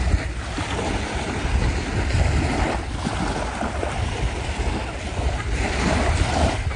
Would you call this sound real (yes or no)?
yes